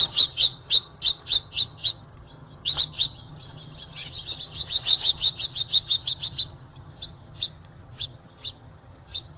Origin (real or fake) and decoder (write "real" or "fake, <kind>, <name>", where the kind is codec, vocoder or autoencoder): fake, vocoder, HiFi-GAN